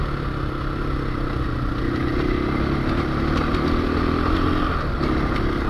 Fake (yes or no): no